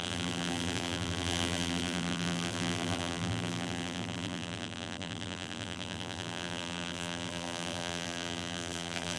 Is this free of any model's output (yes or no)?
no